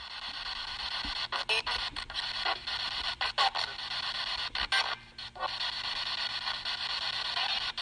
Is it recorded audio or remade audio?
recorded